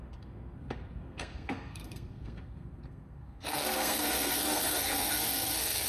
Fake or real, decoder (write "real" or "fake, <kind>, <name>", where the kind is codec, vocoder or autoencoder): fake, codec, SNAC